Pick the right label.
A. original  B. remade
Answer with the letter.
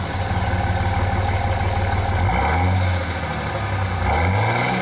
A